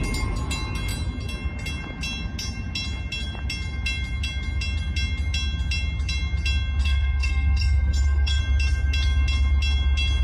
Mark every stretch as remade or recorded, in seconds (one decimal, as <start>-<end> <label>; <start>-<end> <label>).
0.0-6.8 recorded; 6.8-8.4 remade; 8.4-10.2 recorded